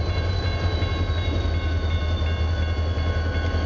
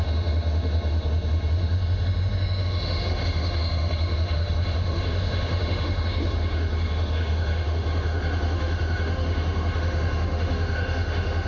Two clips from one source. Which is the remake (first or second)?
second